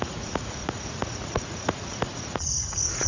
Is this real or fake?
fake